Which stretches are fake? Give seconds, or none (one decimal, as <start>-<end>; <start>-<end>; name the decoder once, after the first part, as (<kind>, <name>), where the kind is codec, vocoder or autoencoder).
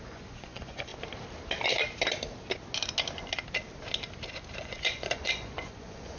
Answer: 0.0-0.9 (vocoder, Vocos); 4.6-6.2